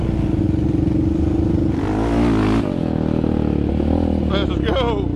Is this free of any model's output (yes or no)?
yes